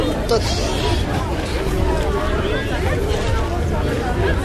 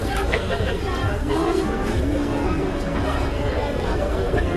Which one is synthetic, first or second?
second